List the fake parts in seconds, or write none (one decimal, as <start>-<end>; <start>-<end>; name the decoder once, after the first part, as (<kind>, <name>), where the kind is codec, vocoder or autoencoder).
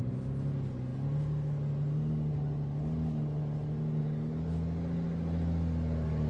none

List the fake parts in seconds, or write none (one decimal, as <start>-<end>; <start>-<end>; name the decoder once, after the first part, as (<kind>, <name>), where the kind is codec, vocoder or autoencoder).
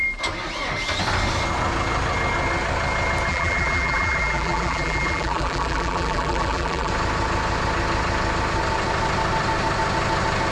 3.3-6.9 (vocoder, BigVGAN v2)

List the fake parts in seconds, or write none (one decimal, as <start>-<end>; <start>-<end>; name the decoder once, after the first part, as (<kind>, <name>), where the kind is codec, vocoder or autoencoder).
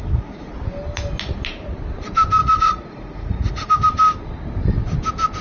0.0-0.5 (vocoder, Vocos); 2.4-3.7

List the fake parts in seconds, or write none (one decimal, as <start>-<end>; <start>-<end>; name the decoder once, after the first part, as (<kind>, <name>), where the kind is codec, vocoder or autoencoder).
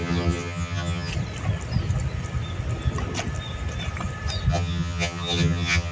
0.0-1.1 (vocoder, HiFi-GAN); 4.5-5.9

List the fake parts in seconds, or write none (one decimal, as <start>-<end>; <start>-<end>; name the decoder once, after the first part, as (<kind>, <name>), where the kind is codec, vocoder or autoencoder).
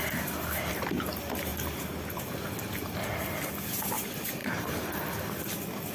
none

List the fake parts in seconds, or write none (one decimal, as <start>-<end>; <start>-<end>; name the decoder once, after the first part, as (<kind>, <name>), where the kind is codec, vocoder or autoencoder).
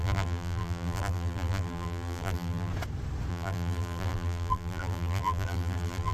0.0-2.7 (vocoder, BigVGAN v2); 3.3-6.1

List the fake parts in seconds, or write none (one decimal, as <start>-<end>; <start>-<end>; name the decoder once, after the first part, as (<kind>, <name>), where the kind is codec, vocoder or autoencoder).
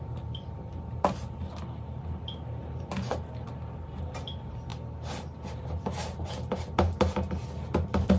none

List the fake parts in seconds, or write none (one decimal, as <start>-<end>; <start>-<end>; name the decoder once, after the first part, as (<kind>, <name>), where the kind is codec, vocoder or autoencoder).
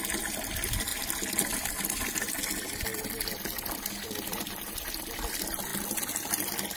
none